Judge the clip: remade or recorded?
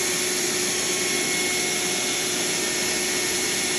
recorded